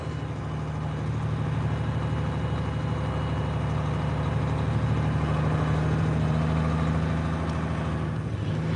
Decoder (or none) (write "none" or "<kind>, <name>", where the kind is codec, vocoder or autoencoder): none